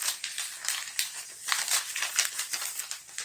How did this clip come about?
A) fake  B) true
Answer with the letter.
B